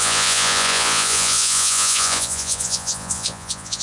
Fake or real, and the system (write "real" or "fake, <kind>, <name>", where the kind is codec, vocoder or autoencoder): fake, vocoder, Vocos